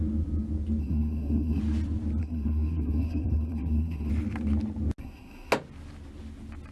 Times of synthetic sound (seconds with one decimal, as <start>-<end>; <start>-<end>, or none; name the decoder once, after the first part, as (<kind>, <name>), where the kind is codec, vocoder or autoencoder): 0.8-1.6 (codec, SNAC); 2.2-4.1; 5.0-5.5